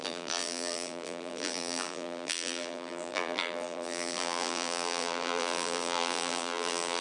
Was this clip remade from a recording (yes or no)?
yes